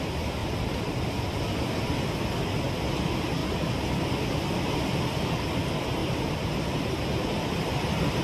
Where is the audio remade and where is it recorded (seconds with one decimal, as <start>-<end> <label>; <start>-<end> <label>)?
0.0-0.4 recorded; 0.4-1.4 remade; 1.4-6.0 recorded; 6.0-7.7 remade; 7.7-8.2 recorded